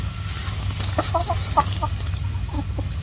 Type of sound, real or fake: real